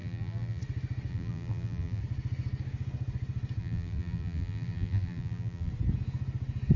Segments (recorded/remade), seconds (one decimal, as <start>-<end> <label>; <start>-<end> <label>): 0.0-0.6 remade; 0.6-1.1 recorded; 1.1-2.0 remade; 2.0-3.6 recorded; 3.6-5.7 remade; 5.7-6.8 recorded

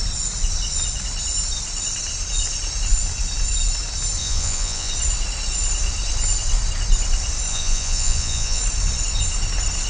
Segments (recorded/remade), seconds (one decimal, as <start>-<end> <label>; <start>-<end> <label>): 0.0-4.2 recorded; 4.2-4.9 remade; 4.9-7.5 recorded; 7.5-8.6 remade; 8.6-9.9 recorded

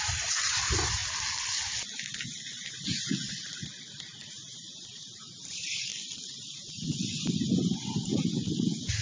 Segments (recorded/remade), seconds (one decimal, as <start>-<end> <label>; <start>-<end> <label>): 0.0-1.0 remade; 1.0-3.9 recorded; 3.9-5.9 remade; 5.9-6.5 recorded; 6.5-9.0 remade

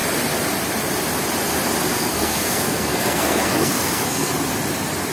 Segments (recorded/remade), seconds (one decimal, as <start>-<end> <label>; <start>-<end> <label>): 0.0-1.9 recorded; 1.9-4.3 remade; 4.3-5.1 recorded